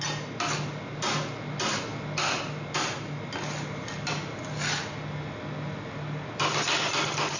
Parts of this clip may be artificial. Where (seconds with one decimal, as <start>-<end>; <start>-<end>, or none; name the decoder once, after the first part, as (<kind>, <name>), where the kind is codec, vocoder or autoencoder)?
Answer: none